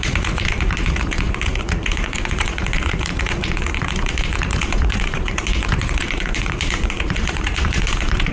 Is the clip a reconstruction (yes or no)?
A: yes